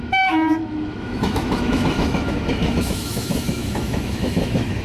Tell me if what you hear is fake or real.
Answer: fake